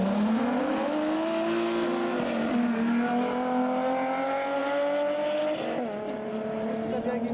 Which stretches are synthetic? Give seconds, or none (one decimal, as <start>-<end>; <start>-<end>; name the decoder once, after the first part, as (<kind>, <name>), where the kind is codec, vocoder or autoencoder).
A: none